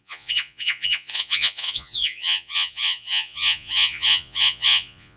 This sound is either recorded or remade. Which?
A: remade